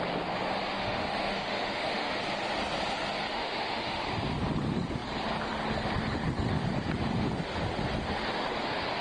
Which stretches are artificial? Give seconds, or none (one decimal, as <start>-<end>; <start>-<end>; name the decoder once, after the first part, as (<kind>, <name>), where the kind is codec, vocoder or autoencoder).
0.7-2.1 (autoencoder, DAC-VAE); 3.3-4.0